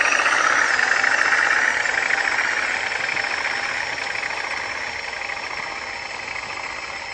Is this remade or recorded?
recorded